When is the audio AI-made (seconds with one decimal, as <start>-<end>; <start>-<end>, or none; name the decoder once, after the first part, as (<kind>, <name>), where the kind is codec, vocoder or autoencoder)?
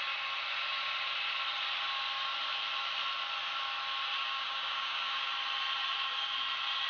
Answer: 4.2-5.3 (codec, DAC)